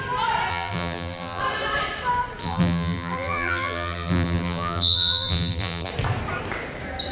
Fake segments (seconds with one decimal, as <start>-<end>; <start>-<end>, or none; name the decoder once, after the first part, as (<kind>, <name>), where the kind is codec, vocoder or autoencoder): 0.5-1.4 (vocoder, BigVGAN v2); 2.4-5.9